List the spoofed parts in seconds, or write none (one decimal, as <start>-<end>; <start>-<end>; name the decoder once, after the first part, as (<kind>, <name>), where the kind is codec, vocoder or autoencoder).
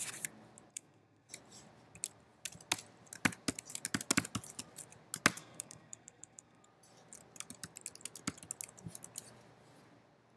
0.7-1.3 (codec, SNAC); 5.4-6.6